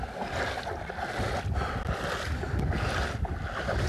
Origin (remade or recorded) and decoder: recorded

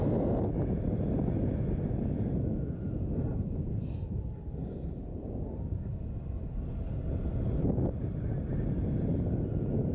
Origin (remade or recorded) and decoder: recorded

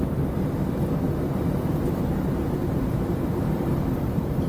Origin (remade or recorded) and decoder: remade, vocoder, BigVGAN v2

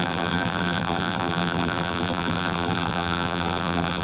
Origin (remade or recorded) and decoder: remade, vocoder, BigVGAN v2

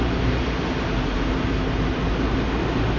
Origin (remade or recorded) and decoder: recorded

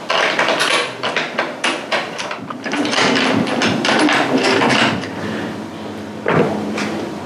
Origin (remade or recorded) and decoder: remade, vocoder, BigVGAN v2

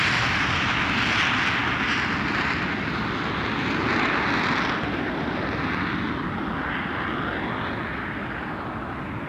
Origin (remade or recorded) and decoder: recorded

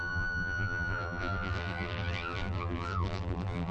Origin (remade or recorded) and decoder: remade, vocoder, BigVGAN v2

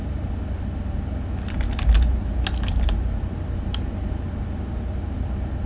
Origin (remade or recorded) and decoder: recorded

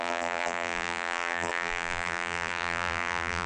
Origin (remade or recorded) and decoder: remade, vocoder, BigVGAN v2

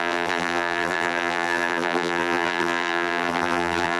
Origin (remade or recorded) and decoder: remade, vocoder, BigVGAN v2